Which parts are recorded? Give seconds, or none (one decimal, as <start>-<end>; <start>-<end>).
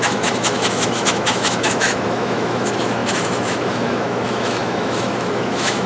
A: none